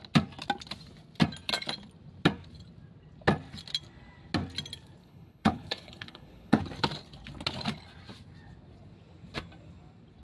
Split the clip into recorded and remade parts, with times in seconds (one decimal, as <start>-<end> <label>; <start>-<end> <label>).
0.0-5.0 recorded; 5.0-6.6 remade; 6.6-10.2 recorded